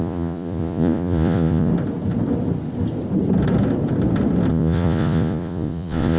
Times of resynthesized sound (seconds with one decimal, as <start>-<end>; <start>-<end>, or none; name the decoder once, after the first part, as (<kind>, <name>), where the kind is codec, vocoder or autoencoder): 0.0-1.7 (vocoder, Vocos); 4.5-6.2